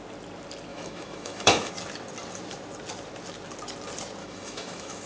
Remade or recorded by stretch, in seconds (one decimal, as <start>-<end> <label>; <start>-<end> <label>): 0.0-0.7 recorded; 0.7-1.7 remade; 1.7-4.2 recorded; 4.2-5.1 remade